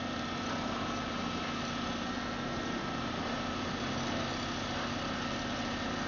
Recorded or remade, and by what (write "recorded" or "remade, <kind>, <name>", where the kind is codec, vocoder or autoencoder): recorded